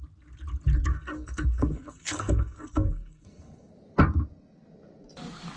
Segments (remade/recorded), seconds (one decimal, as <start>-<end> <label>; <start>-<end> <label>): 0.0-0.9 recorded; 0.9-3.7 remade; 3.7-5.6 recorded